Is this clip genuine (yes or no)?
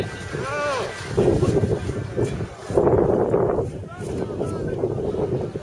yes